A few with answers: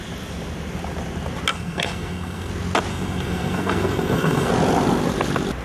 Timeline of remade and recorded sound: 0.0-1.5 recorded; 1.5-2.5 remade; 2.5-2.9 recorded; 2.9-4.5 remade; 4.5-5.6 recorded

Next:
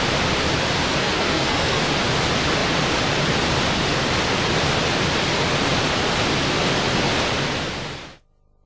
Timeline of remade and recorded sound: 0.0-0.9 recorded; 0.9-1.8 remade; 1.8-8.7 recorded

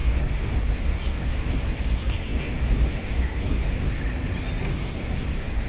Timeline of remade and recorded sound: 0.0-4.0 remade; 4.0-4.7 recorded; 4.7-5.7 remade

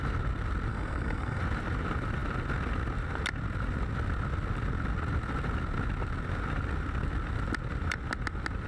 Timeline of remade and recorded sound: 0.0-0.7 recorded; 0.7-1.4 remade; 1.4-8.7 recorded

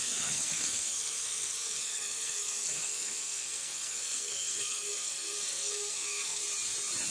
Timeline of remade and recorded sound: 0.0-6.4 remade; 6.4-7.1 recorded